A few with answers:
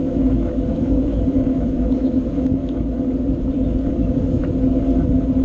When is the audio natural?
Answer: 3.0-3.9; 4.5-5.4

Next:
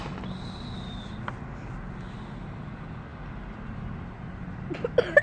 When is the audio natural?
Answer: 0.0-5.2